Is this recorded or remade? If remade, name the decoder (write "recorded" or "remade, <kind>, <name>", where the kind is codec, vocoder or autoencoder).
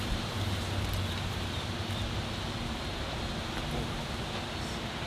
recorded